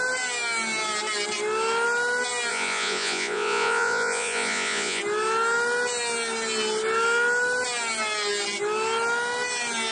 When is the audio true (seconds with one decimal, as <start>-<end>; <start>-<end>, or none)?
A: 0.0-2.5; 5.0-9.9